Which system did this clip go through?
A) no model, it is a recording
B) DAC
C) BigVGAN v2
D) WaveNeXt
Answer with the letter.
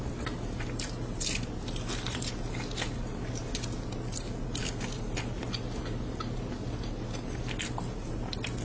A